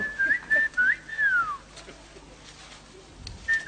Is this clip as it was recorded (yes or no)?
yes